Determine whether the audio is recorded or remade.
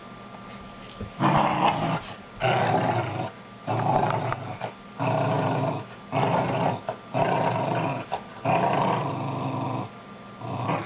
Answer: recorded